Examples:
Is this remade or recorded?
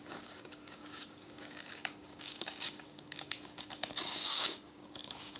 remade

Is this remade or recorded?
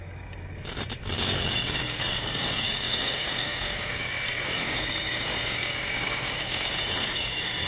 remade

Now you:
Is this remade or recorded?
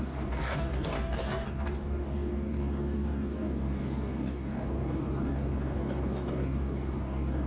remade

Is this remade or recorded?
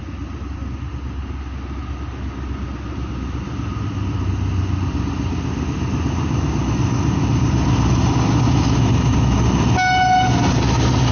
recorded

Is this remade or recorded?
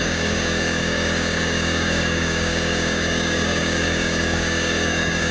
remade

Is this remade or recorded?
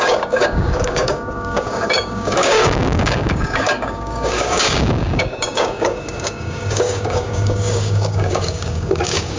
remade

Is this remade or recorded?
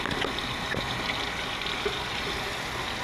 recorded